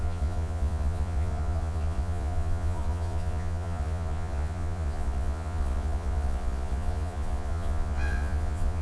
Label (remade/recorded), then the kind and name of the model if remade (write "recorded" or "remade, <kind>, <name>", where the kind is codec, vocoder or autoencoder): remade, vocoder, Vocos